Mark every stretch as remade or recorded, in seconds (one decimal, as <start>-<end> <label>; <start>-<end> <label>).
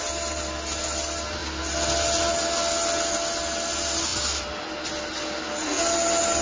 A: 0.0-6.4 recorded